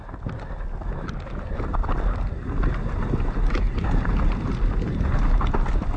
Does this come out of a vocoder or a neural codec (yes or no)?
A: no